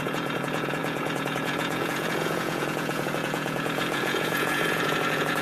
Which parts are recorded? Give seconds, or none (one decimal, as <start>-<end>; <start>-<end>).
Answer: none

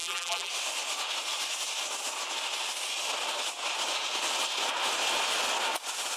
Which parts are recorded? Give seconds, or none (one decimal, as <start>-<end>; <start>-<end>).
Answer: 0.5-6.2

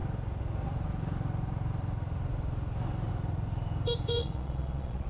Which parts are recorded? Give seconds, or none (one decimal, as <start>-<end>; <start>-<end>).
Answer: 0.0-4.2